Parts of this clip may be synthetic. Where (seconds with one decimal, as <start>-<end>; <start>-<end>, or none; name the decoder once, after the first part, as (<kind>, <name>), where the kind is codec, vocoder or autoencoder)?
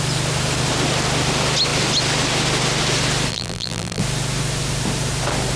3.3-4.0 (vocoder, BigVGAN v2)